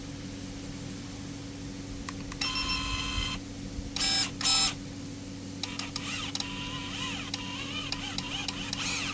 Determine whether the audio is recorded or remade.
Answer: recorded